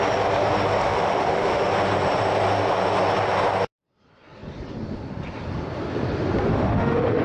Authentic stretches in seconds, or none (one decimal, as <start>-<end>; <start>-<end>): 0.0-0.8; 1.7-6.5